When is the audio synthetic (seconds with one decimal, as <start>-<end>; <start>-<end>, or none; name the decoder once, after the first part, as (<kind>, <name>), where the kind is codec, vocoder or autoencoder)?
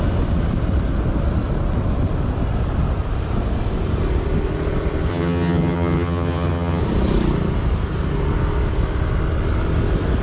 5.1-6.8 (vocoder, HiFi-GAN)